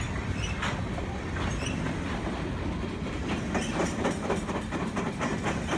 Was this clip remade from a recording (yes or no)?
no